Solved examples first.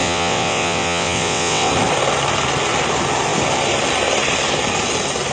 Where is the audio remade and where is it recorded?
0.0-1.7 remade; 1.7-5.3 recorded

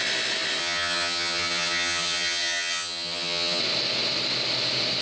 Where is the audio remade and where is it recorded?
0.0-0.6 recorded; 0.6-3.6 remade; 3.6-5.0 recorded

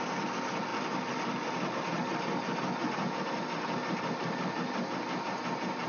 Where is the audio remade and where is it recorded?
0.0-5.9 recorded